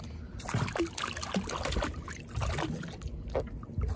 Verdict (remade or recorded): recorded